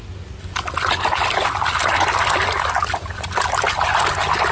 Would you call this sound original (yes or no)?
yes